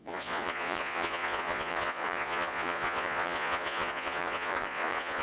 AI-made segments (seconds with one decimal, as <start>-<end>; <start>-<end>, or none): 0.0-5.2